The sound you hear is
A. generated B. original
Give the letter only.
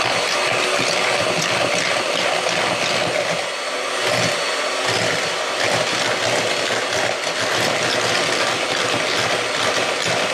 B